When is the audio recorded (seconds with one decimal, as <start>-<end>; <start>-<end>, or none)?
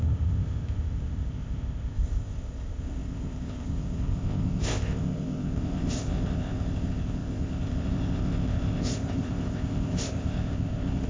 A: none